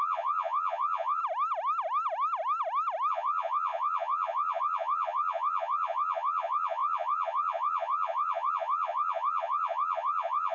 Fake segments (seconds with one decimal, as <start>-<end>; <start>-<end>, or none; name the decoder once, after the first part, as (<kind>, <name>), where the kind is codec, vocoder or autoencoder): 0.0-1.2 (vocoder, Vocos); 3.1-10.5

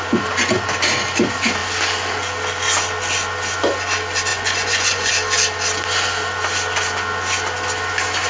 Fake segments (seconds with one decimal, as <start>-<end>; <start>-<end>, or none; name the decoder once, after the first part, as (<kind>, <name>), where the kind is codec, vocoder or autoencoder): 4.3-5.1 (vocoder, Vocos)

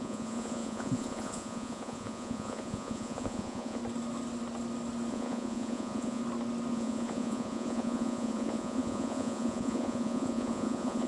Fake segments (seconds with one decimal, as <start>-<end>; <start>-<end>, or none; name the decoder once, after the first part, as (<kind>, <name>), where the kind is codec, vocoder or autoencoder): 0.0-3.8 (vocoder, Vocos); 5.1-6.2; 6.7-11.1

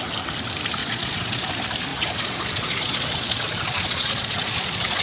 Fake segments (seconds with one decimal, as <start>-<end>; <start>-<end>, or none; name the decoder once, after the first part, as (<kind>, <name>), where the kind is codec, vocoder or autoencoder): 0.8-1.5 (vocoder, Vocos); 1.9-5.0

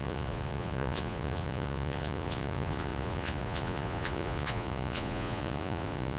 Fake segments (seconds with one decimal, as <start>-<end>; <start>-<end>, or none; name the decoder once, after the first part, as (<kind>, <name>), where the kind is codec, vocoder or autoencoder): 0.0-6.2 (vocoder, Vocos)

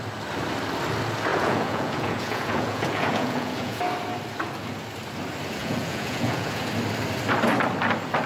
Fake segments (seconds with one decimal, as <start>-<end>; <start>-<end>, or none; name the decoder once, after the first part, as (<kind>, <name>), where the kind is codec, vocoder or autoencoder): 1.3-3.8 (vocoder, Vocos); 5.6-6.7

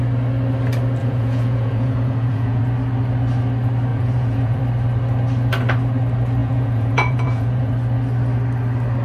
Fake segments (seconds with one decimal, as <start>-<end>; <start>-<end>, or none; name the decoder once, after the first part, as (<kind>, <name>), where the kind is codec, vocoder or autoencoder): 1.0-2.6 (vocoder, Vocos); 3.9-4.6; 6.4-7.7

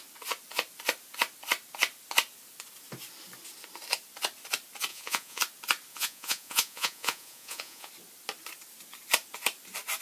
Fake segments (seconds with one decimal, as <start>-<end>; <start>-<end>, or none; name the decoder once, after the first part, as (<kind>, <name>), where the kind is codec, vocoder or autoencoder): 4.9-5.4 (vocoder, Vocos); 5.9-7.9